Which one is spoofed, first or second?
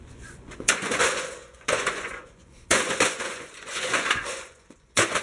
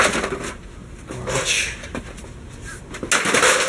first